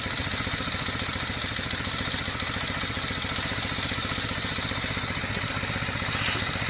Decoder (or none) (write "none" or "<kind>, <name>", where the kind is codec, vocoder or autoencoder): none